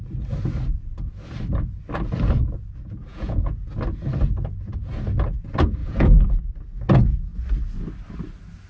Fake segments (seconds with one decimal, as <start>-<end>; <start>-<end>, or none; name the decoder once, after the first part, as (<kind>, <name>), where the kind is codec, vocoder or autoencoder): 3.1-3.7 (vocoder, Vocos); 5.8-6.4